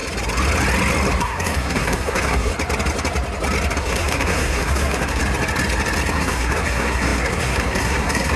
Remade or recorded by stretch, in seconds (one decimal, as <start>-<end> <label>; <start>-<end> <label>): 0.0-1.2 recorded; 1.2-2.5 remade; 2.5-3.8 recorded; 3.8-5.2 remade; 5.2-6.1 recorded; 6.1-8.4 remade